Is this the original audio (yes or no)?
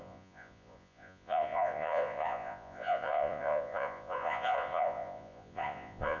no